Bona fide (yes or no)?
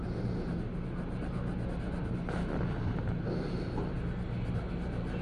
yes